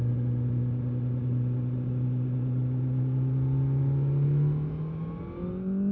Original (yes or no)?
yes